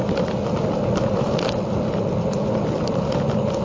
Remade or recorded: recorded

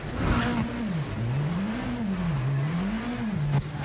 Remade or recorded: recorded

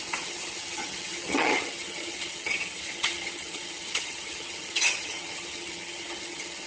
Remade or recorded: remade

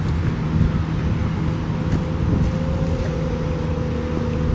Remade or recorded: recorded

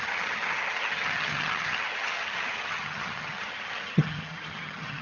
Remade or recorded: remade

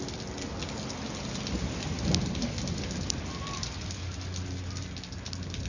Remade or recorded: recorded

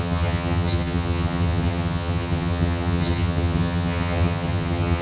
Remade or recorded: remade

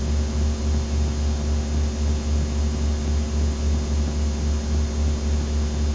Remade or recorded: recorded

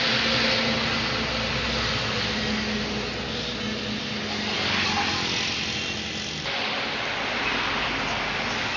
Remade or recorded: recorded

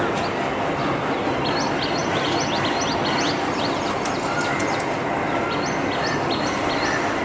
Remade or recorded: recorded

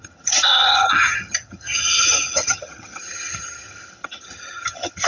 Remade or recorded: remade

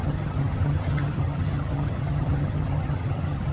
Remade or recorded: remade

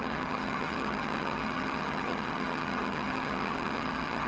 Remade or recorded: remade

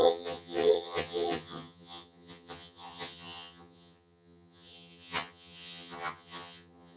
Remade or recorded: remade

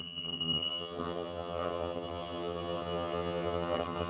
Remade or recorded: remade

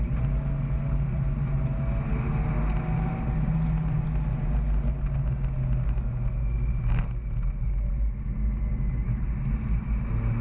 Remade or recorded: recorded